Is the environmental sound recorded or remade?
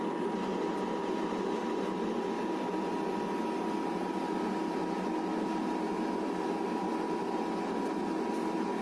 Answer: recorded